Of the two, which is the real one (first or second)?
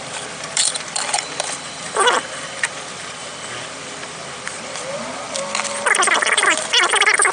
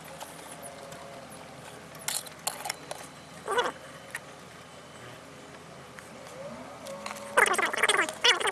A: second